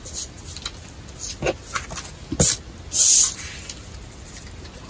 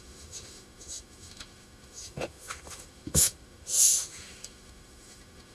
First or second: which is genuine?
first